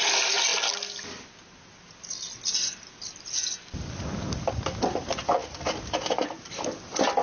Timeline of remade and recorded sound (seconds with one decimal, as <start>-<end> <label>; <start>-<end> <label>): 0.0-7.2 recorded